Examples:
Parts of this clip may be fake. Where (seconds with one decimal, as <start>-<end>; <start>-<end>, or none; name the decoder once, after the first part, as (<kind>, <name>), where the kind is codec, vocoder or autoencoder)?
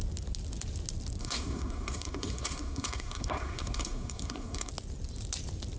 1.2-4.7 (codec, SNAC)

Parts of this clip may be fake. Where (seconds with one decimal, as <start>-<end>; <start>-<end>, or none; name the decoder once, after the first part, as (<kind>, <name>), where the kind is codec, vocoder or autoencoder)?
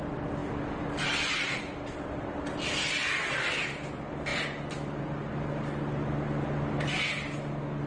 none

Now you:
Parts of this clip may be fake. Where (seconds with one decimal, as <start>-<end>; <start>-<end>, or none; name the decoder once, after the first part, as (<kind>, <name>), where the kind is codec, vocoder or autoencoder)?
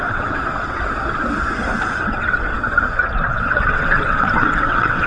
0.0-0.4 (vocoder, WaveNeXt); 1.9-2.5; 3.3-5.1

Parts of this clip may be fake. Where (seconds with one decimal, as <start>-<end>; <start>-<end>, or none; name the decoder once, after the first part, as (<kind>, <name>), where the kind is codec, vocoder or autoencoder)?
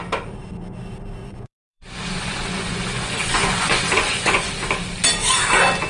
1.2-4.5 (vocoder, Vocos)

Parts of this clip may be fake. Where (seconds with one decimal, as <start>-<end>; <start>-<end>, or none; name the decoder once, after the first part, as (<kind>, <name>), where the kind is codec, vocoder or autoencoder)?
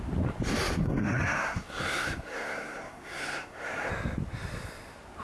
0.8-3.9 (codec, SNAC)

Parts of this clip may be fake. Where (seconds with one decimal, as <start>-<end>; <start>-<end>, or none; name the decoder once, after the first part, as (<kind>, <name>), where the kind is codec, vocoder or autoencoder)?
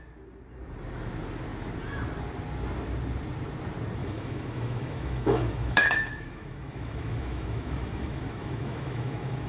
4.0-9.5 (autoencoder, DAC-VAE)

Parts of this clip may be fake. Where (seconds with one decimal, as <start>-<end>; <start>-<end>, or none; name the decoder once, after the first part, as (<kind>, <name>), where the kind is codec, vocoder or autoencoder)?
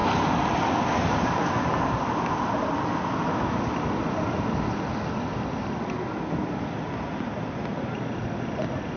none